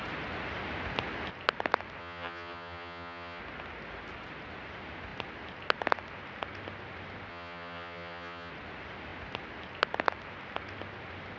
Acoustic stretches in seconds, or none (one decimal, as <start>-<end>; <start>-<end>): 0.0-2.0; 3.4-7.3; 8.5-11.4